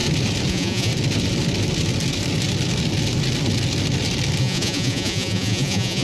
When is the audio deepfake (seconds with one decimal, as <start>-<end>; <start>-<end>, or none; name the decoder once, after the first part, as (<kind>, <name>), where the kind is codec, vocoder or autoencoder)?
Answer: 0.5-0.9 (vocoder, Vocos); 4.4-6.0